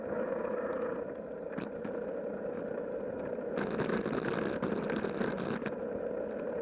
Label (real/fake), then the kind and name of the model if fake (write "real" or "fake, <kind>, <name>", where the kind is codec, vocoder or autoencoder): real